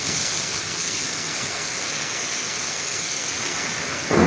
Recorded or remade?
remade